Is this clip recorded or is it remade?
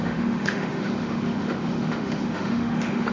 remade